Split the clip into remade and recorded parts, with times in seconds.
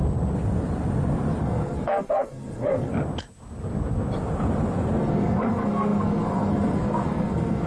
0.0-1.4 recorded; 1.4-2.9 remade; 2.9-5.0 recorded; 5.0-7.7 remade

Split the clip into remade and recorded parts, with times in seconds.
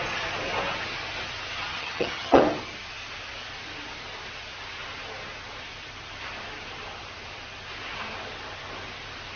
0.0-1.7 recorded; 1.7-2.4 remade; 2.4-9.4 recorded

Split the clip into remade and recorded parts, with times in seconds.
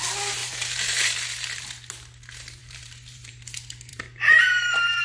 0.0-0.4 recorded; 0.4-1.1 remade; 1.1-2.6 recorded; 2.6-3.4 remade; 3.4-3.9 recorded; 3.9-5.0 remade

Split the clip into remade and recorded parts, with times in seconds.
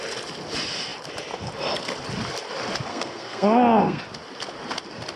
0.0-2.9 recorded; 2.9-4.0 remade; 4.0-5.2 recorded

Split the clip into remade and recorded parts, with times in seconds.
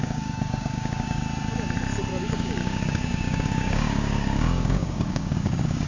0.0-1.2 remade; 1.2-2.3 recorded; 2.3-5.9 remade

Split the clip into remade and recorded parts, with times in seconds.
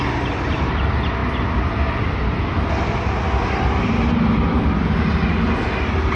0.0-6.2 recorded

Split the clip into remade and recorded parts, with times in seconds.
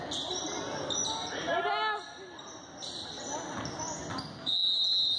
0.0-5.2 recorded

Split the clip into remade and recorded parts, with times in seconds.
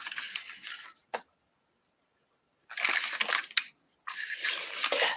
0.0-5.2 recorded